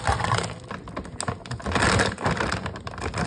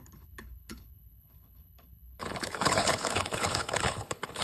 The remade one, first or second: second